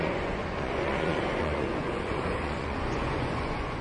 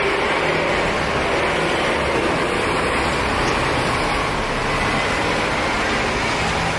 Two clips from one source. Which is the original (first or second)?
second